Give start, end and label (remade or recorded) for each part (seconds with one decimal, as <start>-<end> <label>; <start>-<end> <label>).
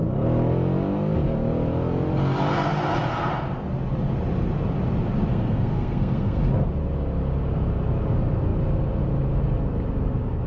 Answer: 0.0-5.3 recorded; 5.3-6.5 remade; 6.5-10.5 recorded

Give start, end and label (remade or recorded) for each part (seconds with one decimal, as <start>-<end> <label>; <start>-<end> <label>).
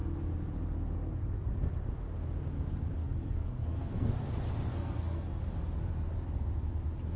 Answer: 0.0-3.0 recorded; 3.0-4.1 remade; 4.1-4.7 recorded; 4.7-5.4 remade; 5.4-7.2 recorded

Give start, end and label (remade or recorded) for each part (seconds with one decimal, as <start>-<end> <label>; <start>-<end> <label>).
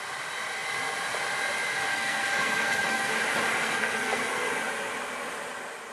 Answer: 0.0-1.9 recorded; 1.9-3.1 remade; 3.1-3.5 recorded; 3.5-4.5 remade; 4.5-5.9 recorded